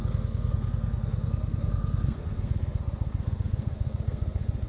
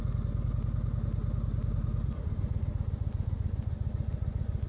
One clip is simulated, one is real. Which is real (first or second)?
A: second